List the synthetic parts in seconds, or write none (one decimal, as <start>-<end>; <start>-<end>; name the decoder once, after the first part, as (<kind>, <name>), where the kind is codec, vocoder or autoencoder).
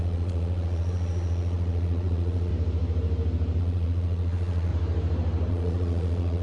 0.0-2.5 (vocoder, Vocos); 3.6-4.7; 5.5-6.4